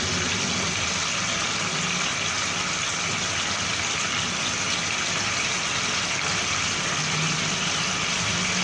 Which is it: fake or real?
real